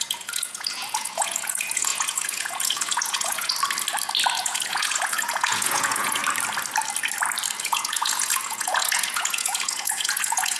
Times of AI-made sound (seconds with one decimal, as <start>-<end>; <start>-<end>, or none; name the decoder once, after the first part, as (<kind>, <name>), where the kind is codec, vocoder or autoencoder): 0.0-3.5 (vocoder, Vocos); 4.4-6.2; 7.6-10.6